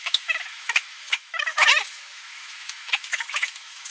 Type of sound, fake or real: fake